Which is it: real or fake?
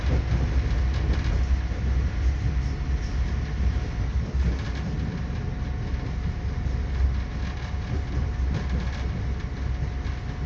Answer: real